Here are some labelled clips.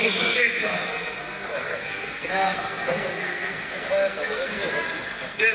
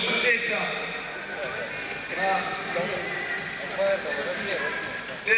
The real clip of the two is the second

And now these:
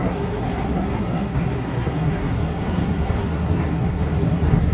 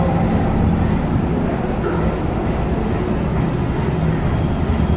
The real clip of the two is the second